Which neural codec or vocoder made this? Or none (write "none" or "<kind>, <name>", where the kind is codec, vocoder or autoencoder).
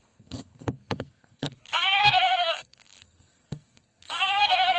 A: codec, SNAC